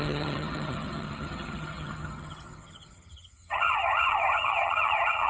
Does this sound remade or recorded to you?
remade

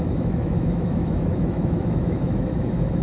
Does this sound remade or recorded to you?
remade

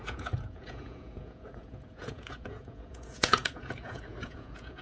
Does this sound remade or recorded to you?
remade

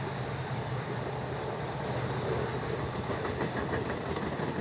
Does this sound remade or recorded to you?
remade